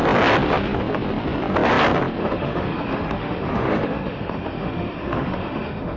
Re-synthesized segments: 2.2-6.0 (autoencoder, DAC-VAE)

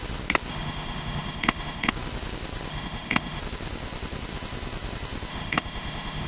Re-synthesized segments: 0.5-1.9 (autoencoder, DAC-VAE); 2.7-3.4; 5.3-6.3

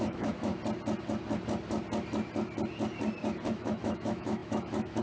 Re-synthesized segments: 0.0-0.5 (autoencoder, DAC-VAE); 3.5-5.0

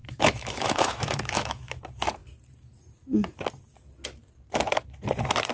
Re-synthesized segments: 0.0-1.8 (autoencoder, DAC-VAE)

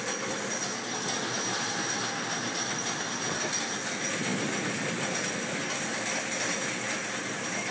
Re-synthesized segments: none

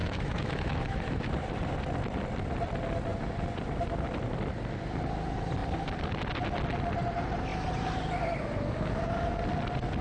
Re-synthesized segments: 0.0-1.3 (autoencoder, DAC-VAE)

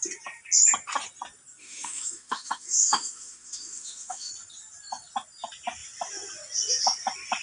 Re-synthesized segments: 1.6-4.3 (autoencoder, DAC-VAE)